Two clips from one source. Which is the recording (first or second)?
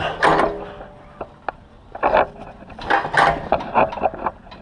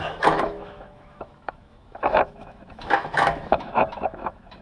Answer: first